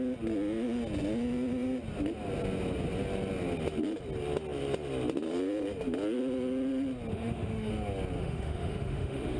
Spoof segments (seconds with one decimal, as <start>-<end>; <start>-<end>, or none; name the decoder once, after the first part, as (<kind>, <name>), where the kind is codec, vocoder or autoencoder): 7.1-7.7 (autoencoder, DAC-VAE); 8.2-9.4